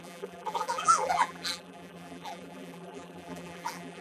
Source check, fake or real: fake